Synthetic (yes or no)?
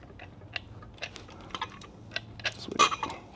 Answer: no